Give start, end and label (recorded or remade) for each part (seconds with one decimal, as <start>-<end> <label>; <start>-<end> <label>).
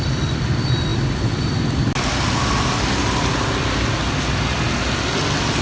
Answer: 0.0-5.6 recorded